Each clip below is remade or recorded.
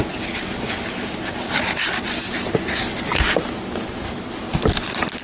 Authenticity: recorded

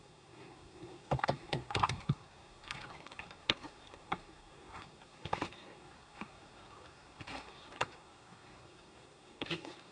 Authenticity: remade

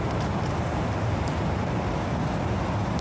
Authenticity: recorded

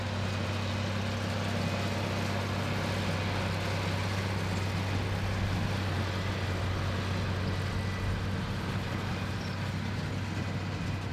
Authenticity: recorded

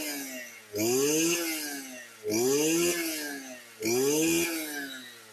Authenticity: recorded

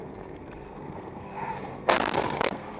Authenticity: remade